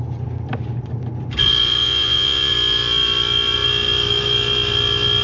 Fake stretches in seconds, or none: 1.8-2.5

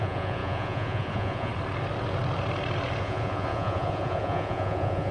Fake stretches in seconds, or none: 0.0-1.5; 3.0-5.1

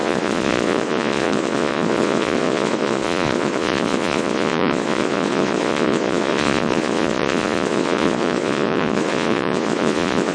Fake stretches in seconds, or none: 0.0-10.3

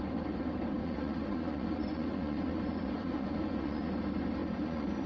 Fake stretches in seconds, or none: 0.8-3.9; 4.4-5.1

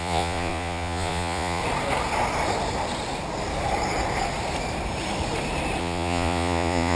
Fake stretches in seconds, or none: 0.0-1.6; 5.8-7.0

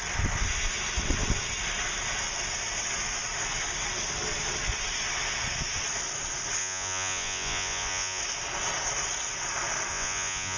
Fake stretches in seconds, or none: 6.6-8.2; 9.9-10.6

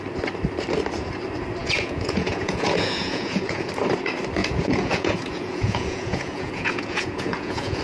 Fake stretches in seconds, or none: 1.6-3.7; 4.4-7.8